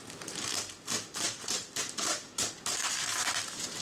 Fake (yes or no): yes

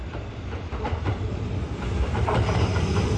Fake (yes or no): no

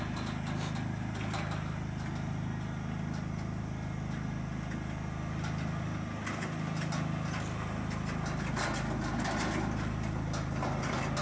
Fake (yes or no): no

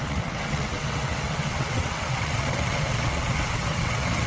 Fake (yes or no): yes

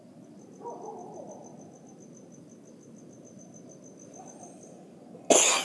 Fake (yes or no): no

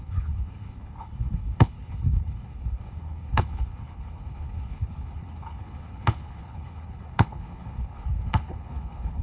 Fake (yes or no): yes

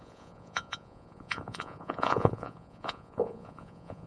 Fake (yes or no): yes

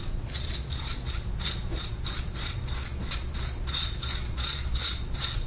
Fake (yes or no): yes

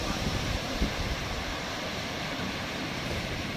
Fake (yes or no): yes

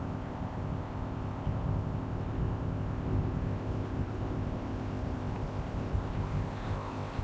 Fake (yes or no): yes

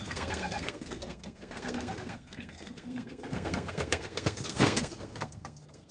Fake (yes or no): yes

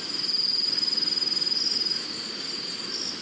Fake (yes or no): no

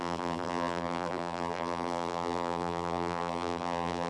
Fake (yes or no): yes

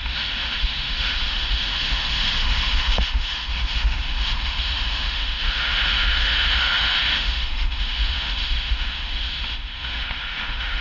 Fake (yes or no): yes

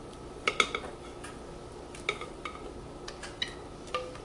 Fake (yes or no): no